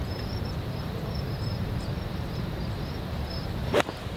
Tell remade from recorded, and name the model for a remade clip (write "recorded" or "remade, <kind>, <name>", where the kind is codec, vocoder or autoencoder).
remade, vocoder, BigVGAN v2